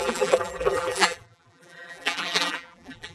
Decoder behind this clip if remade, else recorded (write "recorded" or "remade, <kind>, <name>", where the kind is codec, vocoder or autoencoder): remade, vocoder, BigVGAN v2